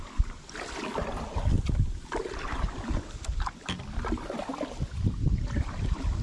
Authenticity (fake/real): real